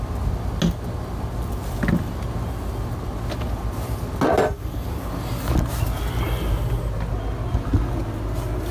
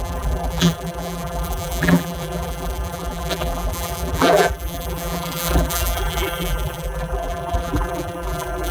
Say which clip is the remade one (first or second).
second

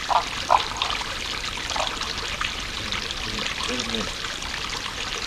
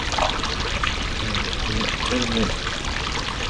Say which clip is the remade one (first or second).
first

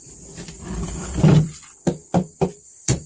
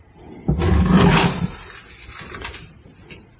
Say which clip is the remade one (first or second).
first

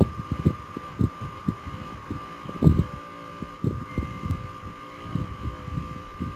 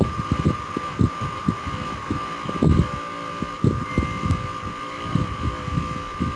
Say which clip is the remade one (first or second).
first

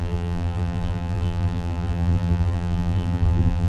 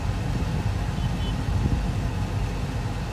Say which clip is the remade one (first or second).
first